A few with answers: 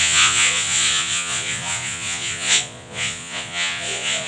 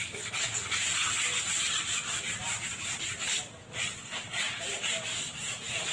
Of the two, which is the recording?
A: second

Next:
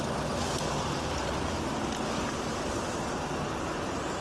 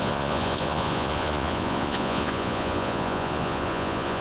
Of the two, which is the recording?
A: first